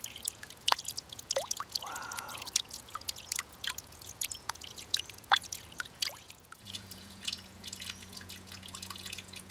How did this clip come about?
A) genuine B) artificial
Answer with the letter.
B